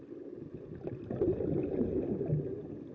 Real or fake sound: real